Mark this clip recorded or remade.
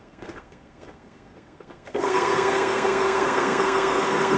remade